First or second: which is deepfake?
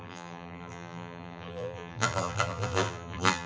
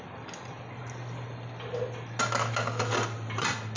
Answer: first